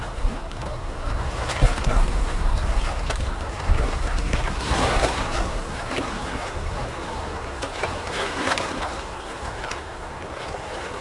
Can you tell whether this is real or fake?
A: fake